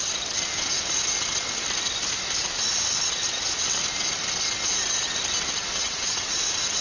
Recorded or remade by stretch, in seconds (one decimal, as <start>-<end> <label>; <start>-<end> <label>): 0.0-5.7 recorded; 5.7-6.3 remade; 6.3-6.8 recorded